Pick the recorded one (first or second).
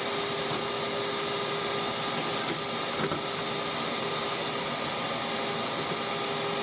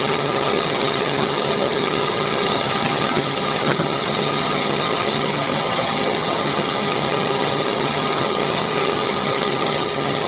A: first